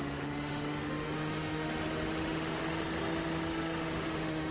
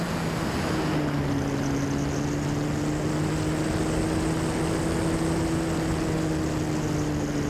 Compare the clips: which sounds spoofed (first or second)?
first